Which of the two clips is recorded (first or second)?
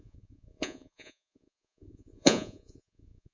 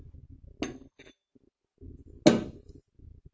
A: second